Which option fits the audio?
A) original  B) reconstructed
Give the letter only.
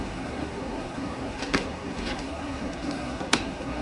B